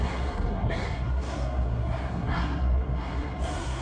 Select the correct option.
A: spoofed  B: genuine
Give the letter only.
A